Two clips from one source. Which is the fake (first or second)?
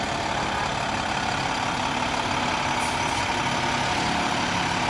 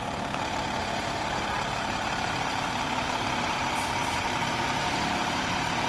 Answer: second